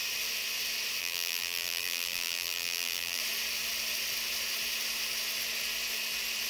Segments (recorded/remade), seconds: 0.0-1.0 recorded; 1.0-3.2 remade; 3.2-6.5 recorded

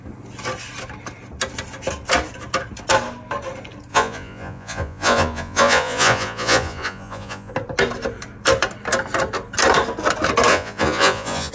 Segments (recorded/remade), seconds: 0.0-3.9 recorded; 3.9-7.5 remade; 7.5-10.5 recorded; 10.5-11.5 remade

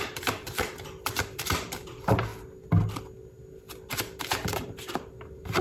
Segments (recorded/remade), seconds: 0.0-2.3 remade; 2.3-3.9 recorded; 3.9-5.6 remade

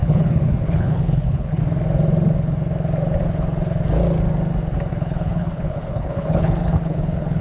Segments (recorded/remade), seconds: 0.0-1.6 remade; 1.6-4.9 recorded; 4.9-7.4 remade

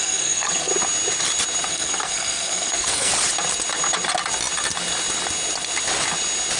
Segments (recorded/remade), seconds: 0.0-0.7 remade; 0.7-1.7 recorded; 1.7-3.1 remade; 3.1-6.6 recorded